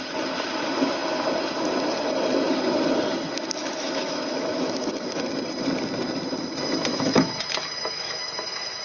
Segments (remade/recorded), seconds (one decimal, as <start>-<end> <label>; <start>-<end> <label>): 0.0-3.6 recorded; 3.6-5.3 remade; 5.3-6.9 recorded; 6.9-8.8 remade